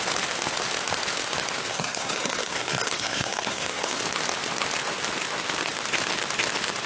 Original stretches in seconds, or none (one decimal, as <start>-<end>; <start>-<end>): 0.0-1.7; 4.0-6.9